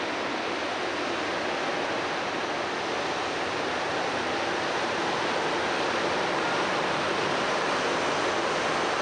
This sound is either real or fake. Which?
real